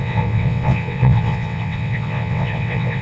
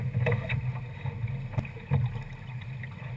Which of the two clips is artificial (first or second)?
first